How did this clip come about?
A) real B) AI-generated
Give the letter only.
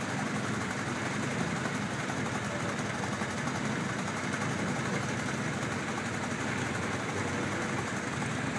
A